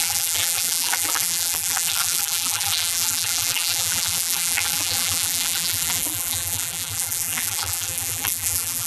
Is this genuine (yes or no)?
no